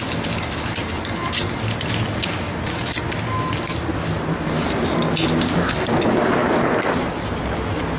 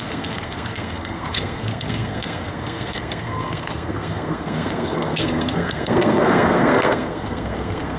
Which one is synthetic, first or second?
second